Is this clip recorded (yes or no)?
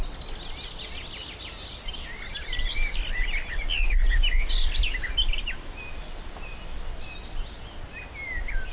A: yes